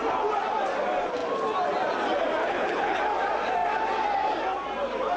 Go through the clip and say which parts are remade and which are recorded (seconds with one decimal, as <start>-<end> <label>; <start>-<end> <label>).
0.0-2.4 recorded; 2.4-3.0 remade; 3.0-5.2 recorded